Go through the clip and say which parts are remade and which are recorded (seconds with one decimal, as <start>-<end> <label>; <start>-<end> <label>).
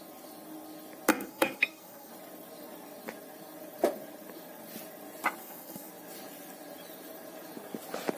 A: 0.0-1.1 recorded; 1.1-2.1 remade; 2.1-5.4 recorded; 5.4-5.9 remade; 5.9-8.2 recorded